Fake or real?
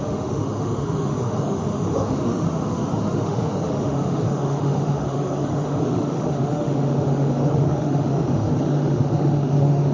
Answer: fake